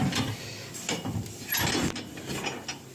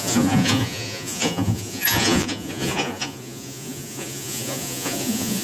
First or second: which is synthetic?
second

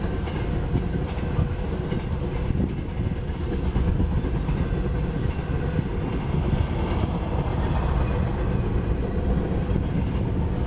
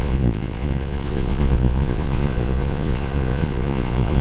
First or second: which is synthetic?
second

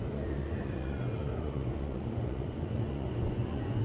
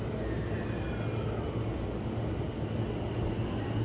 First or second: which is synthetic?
first